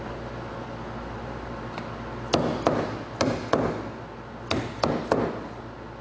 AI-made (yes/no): no